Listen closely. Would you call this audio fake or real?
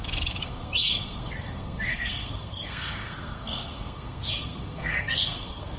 fake